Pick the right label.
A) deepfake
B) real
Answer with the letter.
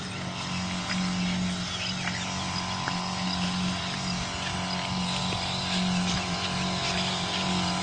B